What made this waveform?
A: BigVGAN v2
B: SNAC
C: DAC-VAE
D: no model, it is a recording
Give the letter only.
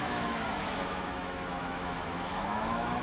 C